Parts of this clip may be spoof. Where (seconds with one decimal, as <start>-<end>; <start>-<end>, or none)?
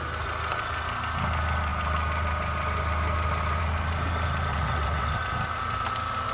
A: 4.5-5.2